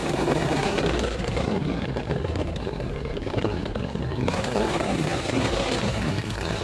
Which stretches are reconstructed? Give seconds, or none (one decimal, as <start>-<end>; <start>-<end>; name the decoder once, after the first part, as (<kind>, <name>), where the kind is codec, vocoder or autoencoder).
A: 0.0-6.6 (codec, SNAC)